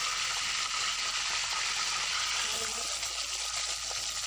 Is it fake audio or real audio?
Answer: real